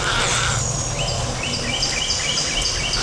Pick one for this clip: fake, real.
real